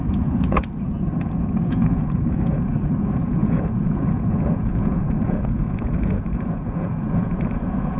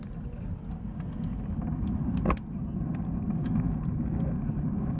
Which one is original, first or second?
second